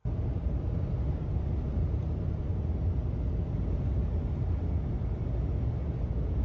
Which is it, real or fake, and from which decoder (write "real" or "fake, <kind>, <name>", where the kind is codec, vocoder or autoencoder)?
real